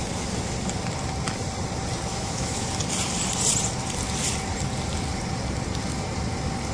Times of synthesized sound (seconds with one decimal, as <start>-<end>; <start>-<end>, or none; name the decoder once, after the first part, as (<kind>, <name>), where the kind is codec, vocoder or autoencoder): 2.1-2.7 (autoencoder, DAC-VAE)